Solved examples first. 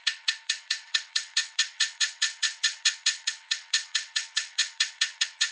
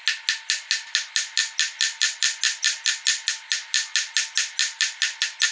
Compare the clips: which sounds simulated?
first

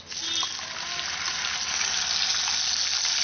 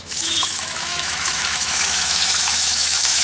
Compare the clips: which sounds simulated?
second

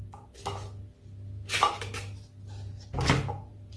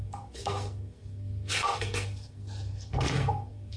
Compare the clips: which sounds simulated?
second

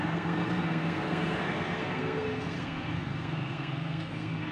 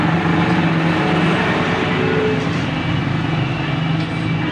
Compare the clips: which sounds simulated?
first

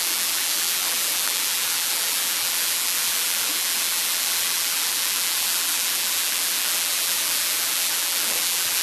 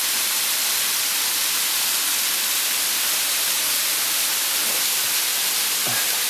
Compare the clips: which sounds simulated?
first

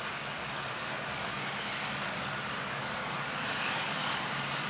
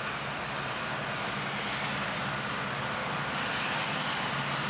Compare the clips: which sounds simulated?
first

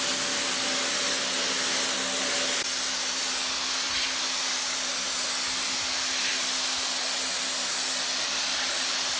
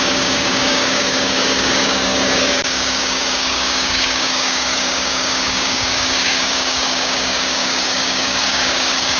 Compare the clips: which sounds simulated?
second